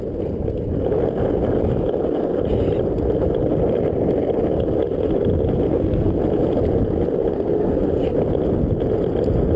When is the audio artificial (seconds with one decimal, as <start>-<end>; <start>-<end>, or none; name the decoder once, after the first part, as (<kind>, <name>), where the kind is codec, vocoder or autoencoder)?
5.6-6.1 (codec, SNAC); 7.3-8.1